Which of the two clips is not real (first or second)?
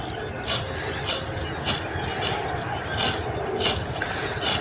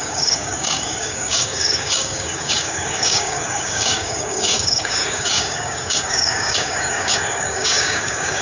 second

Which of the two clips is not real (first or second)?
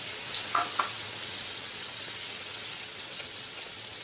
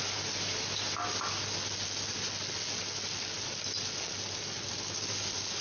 first